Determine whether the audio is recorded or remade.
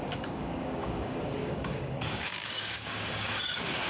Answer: remade